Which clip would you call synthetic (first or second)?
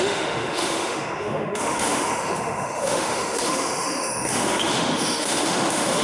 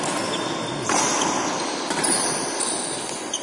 first